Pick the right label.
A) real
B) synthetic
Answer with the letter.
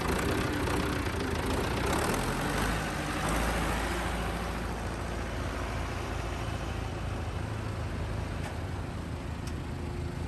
A